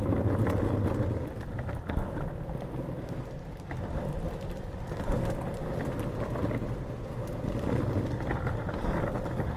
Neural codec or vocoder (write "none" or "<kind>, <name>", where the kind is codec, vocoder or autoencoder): none